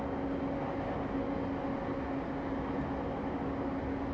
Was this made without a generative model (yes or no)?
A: yes